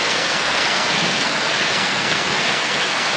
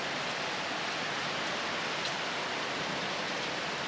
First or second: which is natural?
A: second